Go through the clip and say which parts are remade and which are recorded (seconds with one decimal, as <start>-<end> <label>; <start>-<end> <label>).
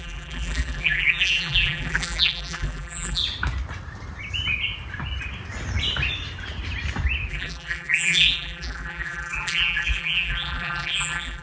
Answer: 0.0-3.2 remade; 3.2-7.3 recorded; 7.3-11.4 remade